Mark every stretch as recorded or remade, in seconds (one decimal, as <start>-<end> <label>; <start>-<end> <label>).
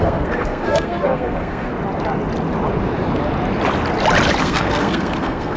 0.0-1.7 remade; 1.7-4.4 recorded; 4.4-5.6 remade